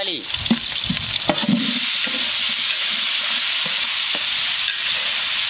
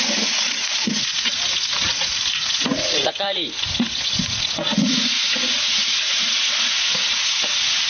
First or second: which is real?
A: first